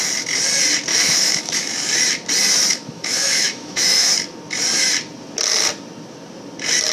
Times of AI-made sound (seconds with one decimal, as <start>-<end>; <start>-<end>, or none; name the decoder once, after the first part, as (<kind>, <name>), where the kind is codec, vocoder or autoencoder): 0.9-1.7 (autoencoder, DAC-VAE); 2.7-4.1